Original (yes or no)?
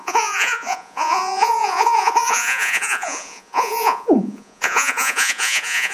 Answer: no